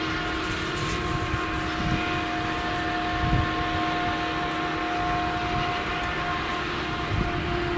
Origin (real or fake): real